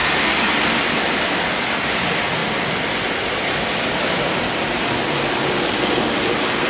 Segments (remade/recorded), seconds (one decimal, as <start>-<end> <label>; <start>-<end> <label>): 0.0-6.7 recorded